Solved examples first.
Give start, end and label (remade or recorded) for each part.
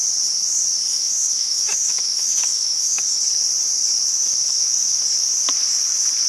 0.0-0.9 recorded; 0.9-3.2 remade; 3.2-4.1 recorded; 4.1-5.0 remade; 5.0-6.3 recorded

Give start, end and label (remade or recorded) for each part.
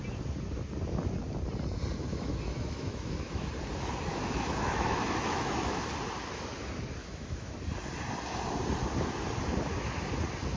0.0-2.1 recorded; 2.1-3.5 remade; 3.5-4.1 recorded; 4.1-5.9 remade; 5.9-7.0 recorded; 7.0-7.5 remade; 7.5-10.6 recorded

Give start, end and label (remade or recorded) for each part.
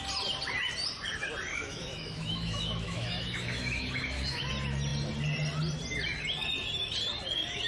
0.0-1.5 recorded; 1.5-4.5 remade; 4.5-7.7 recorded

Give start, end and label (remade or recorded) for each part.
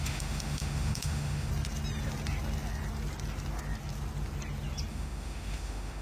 0.0-1.5 remade; 1.5-4.9 recorded; 4.9-6.0 remade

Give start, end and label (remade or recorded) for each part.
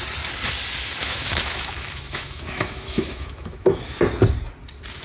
0.0-1.0 recorded; 1.0-4.0 remade; 4.0-5.0 recorded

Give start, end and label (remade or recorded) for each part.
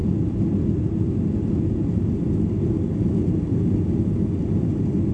0.0-5.1 recorded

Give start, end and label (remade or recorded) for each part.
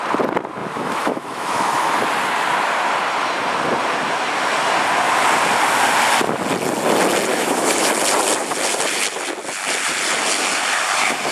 0.0-0.6 recorded; 0.6-1.9 remade; 1.9-7.3 recorded; 7.3-7.9 remade; 7.9-11.3 recorded